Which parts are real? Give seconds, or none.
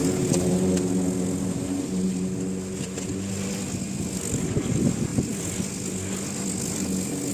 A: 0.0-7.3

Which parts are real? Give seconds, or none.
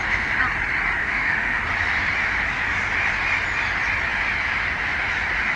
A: 0.0-1.0; 1.6-5.6